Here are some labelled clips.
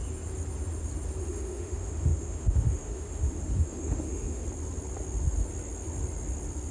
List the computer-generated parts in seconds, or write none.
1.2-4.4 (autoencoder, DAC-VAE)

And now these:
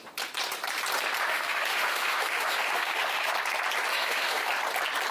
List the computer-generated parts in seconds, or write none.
1.3-3.3 (autoencoder, DAC-VAE); 3.9-4.5

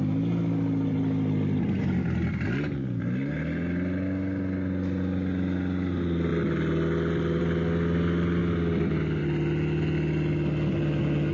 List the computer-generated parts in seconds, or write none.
none

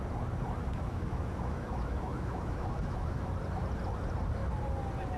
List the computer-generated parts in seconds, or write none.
0.6-3.2 (autoencoder, DAC-VAE)